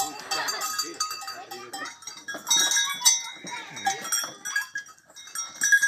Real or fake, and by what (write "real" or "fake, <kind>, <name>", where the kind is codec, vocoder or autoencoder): real